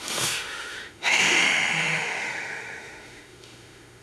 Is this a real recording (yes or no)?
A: no